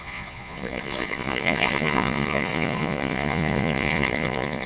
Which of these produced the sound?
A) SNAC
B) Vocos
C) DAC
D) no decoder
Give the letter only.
B